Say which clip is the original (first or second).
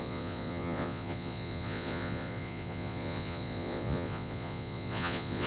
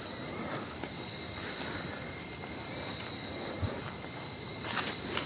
second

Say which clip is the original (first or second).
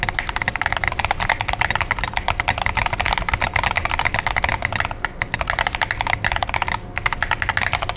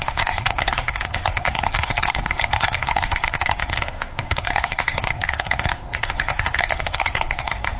first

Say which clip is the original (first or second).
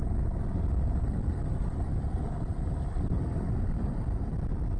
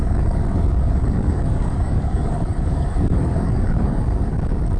first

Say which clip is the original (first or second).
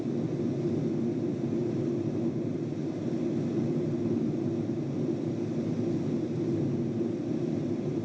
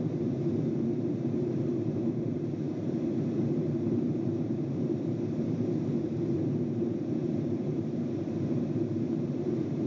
first